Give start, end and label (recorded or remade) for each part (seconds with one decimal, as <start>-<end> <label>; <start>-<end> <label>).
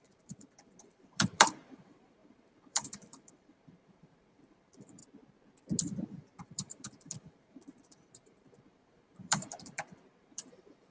0.0-5.0 remade; 5.0-6.4 recorded; 6.4-10.9 remade